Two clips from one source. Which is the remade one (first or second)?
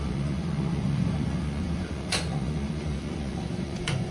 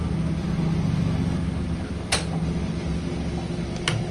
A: first